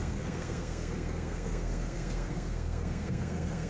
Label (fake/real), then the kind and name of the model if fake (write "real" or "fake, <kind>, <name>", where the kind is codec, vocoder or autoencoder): fake, codec, SNAC